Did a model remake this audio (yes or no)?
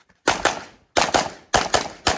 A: no